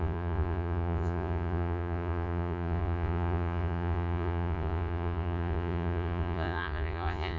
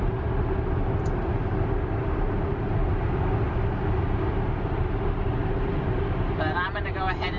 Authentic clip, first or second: second